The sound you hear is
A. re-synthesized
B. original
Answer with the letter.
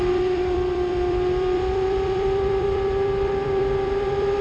A